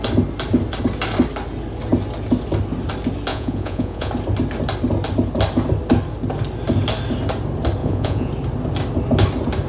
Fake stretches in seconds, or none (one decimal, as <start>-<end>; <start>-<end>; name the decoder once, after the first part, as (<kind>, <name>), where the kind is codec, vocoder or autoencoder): 3.3-4.1 (vocoder, Vocos); 7.8-8.3